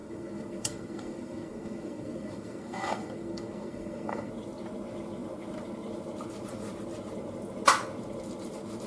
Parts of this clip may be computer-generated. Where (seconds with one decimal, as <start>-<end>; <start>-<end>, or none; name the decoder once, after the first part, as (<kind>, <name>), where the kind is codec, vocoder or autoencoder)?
0.0-4.3 (codec, SNAC)